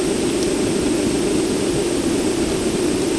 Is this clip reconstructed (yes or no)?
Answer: no